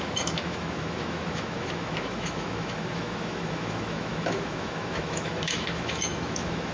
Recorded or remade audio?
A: remade